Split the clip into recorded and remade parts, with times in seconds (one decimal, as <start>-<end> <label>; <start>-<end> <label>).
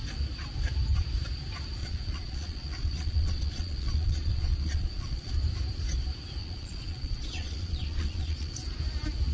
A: 0.0-1.8 recorded; 1.8-5.3 remade; 5.3-6.4 recorded; 6.4-8.5 remade; 8.5-9.3 recorded